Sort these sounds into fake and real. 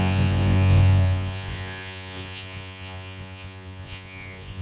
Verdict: fake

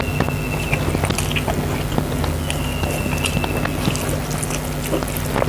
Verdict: real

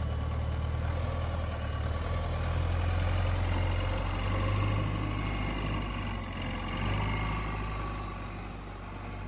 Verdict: real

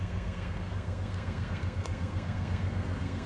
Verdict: fake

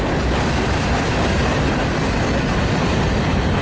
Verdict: real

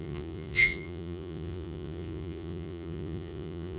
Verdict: fake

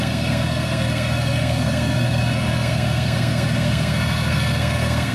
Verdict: fake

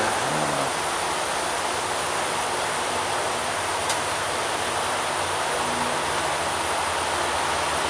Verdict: real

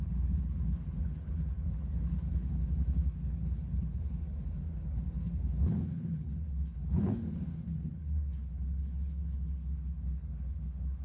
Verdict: fake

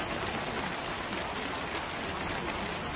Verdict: real